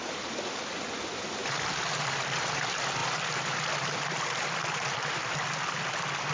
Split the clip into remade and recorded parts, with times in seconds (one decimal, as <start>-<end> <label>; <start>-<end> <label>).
0.0-1.4 recorded; 1.4-2.6 remade; 2.6-6.3 recorded